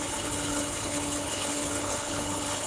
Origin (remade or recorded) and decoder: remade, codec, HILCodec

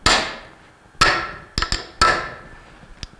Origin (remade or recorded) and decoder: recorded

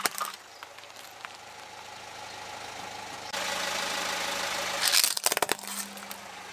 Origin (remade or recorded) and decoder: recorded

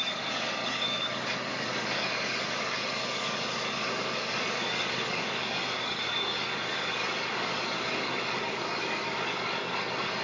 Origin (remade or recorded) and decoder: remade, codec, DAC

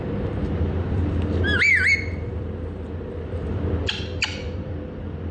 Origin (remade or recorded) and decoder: remade, vocoder, BigVGAN v2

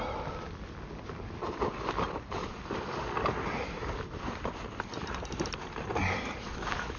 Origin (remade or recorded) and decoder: recorded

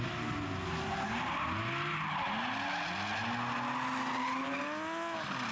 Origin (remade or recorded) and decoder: recorded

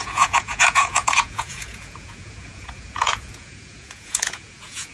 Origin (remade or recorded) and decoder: remade, vocoder, Vocos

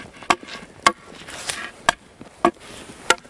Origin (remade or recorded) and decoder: recorded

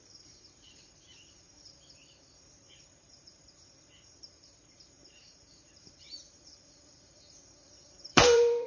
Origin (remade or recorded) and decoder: remade, vocoder, BigVGAN v2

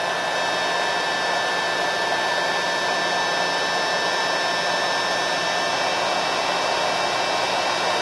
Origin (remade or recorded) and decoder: recorded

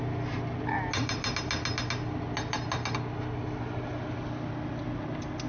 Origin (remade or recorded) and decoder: recorded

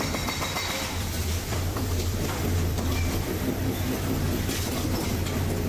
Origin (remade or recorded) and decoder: remade, vocoder, BigVGAN v2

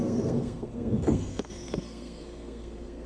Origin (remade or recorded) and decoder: remade, codec, SNAC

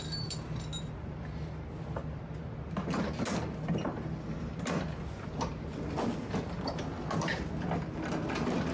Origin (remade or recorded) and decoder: recorded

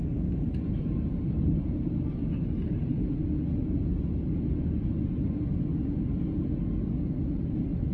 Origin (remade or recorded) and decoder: recorded